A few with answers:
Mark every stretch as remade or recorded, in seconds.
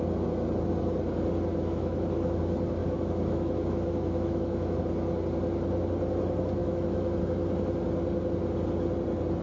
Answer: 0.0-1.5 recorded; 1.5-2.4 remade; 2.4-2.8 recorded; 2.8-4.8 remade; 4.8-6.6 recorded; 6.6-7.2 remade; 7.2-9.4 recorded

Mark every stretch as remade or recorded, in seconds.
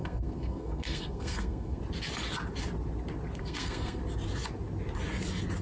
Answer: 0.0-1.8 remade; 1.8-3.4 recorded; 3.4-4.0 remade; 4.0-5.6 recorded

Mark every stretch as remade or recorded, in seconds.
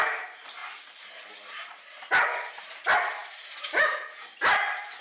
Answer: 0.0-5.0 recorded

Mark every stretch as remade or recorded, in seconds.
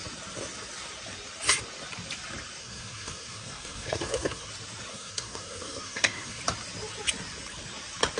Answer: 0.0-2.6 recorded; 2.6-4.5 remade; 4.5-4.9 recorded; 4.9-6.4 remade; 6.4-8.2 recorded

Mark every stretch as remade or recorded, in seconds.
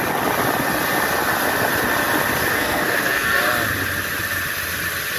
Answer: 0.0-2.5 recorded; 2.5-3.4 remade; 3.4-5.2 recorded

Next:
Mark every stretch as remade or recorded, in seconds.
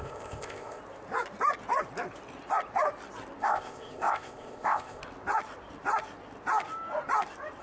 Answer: 0.0-0.8 remade; 0.8-3.4 recorded; 3.4-5.0 remade; 5.0-7.6 recorded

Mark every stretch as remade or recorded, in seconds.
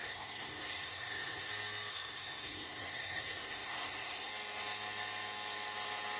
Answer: 0.0-1.5 remade; 1.5-1.9 recorded; 1.9-4.3 remade; 4.3-6.2 recorded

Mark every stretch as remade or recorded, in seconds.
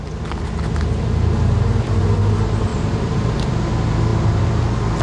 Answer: 0.0-2.7 recorded; 2.7-3.5 remade; 3.5-5.0 recorded